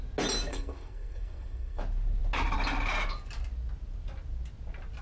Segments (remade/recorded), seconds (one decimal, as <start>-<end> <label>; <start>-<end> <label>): 0.0-0.5 recorded; 0.5-1.8 remade; 1.8-5.0 recorded